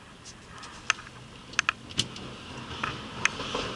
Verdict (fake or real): real